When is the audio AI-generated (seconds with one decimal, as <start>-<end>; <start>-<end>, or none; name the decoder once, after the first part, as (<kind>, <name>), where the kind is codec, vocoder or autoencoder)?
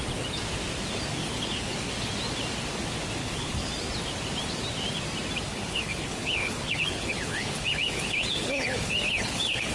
1.2-1.9 (codec, HILCodec); 3.2-3.7; 5.5-9.7